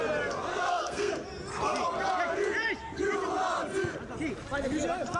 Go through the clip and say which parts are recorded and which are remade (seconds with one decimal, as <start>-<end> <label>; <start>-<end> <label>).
0.0-0.5 recorded; 0.5-1.1 remade; 1.1-5.2 recorded